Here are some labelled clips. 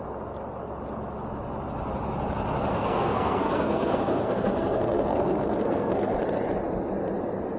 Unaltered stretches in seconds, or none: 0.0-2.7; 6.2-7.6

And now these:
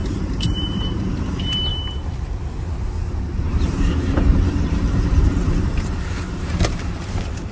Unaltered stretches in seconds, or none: 1.1-1.7; 2.4-3.0